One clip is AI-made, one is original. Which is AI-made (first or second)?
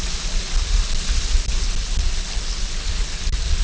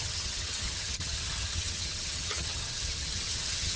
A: second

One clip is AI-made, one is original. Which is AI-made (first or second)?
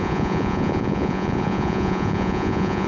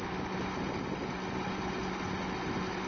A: first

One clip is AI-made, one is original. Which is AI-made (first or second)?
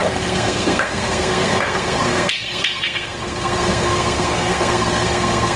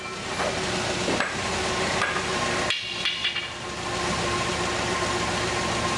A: first